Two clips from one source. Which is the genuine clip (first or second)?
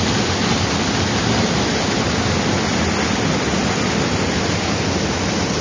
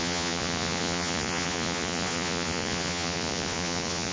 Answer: first